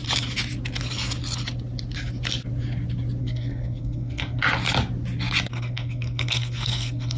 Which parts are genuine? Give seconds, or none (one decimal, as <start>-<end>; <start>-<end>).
0.0-3.2; 4.4-5.5